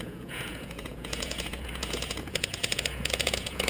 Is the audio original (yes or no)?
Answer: no